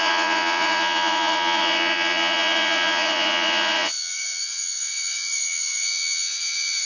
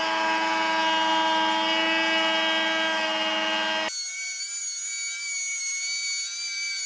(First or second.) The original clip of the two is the second